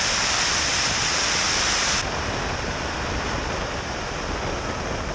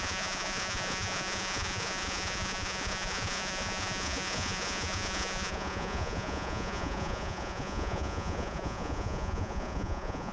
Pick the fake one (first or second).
second